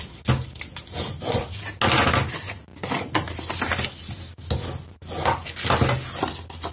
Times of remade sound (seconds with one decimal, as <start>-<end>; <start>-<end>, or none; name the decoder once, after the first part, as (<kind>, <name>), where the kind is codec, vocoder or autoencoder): none